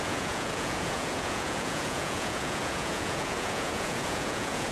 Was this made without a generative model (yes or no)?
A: no